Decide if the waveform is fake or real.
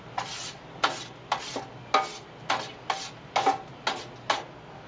real